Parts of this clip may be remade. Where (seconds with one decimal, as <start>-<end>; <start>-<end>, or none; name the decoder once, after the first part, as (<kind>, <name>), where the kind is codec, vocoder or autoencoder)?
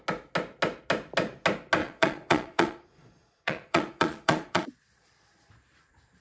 1.8-5.5 (vocoder, Vocos)